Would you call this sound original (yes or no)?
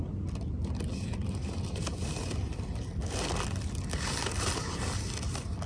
yes